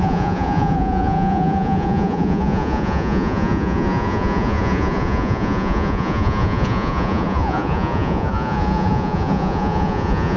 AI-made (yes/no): yes